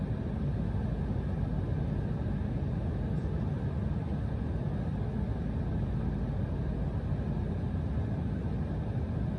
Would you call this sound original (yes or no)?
yes